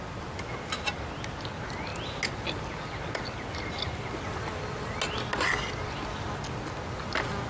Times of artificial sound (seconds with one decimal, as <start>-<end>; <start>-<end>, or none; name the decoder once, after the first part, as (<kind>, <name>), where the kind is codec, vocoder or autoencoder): none